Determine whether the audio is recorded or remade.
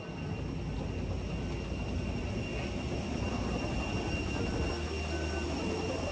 recorded